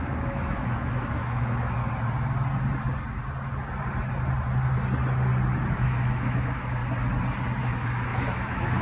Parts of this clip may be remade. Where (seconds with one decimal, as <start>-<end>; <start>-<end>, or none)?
0.0-1.8; 5.7-6.8; 7.6-8.8